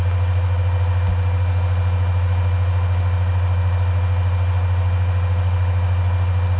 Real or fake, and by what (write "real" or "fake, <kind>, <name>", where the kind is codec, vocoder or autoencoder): real